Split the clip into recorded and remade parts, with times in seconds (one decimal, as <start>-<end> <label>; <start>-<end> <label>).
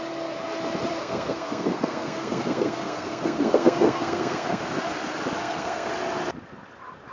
0.0-1.0 recorded; 1.0-4.6 remade; 4.6-5.4 recorded; 5.4-5.9 remade; 5.9-7.1 recorded